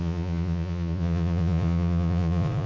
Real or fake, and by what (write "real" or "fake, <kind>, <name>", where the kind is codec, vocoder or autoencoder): fake, vocoder, Vocos